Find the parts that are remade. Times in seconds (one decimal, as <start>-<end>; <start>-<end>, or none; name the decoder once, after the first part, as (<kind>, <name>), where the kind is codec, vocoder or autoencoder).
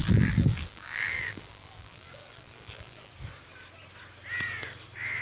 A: 0.0-3.1 (vocoder, BigVGAN v2)